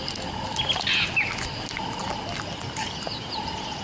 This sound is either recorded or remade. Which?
recorded